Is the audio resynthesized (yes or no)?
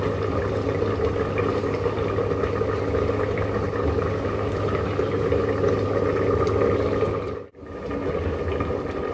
no